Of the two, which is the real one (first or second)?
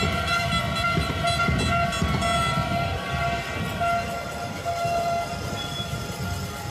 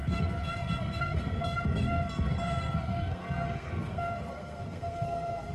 first